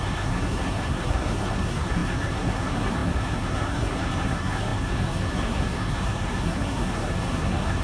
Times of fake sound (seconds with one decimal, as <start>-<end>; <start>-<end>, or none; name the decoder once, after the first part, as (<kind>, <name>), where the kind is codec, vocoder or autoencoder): 0.0-7.8 (codec, SNAC)